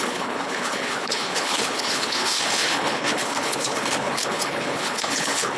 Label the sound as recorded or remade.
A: remade